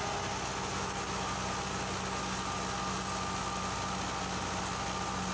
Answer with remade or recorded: recorded